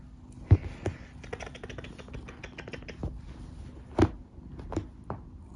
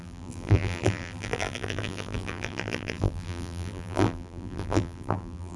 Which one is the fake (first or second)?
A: second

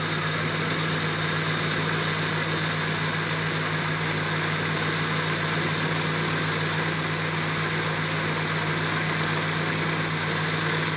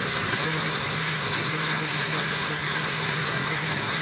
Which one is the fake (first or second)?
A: second